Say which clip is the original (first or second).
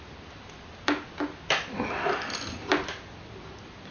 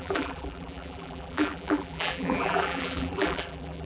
first